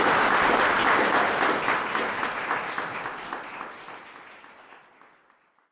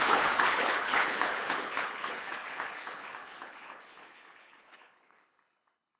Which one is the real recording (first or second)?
first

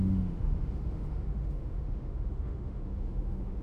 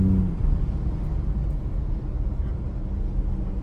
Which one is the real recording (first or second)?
second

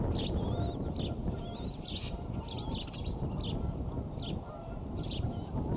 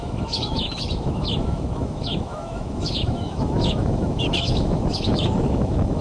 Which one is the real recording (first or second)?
first